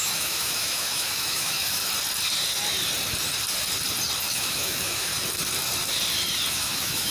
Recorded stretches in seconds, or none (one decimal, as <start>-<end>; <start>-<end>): 1.8-4.3; 5.1-6.5